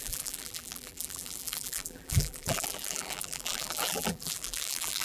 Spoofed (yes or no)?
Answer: yes